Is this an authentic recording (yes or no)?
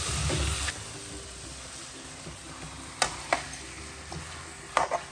yes